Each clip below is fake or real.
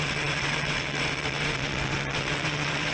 fake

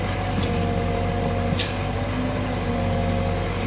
real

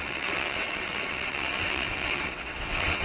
fake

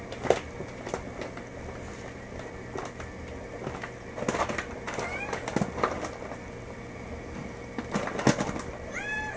real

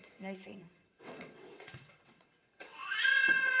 fake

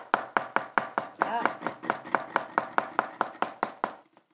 real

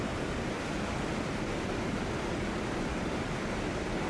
real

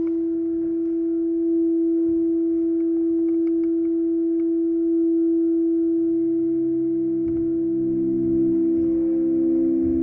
real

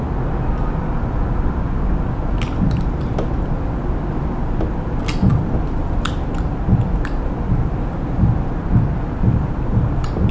real